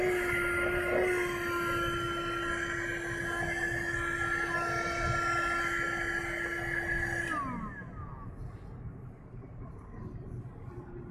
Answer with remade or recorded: recorded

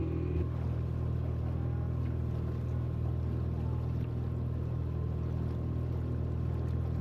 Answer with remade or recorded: recorded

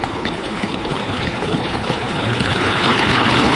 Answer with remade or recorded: remade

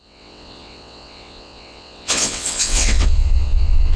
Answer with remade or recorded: remade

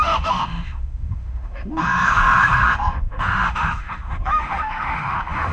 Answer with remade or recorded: remade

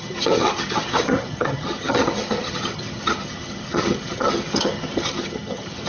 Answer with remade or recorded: remade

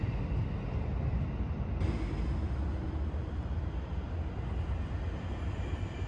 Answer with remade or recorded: recorded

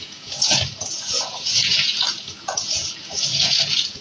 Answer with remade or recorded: remade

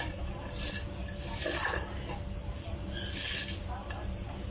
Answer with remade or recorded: recorded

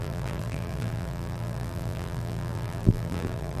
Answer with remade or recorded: remade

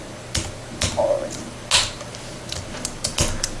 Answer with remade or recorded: recorded